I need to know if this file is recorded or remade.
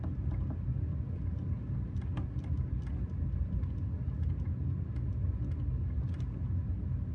recorded